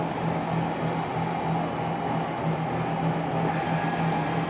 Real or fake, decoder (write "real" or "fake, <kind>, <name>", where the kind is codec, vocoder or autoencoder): real